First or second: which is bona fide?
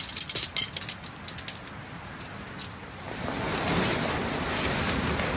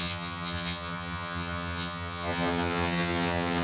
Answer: first